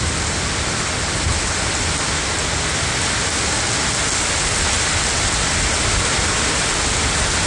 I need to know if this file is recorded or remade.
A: recorded